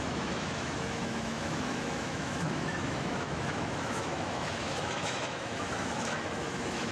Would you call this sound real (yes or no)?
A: no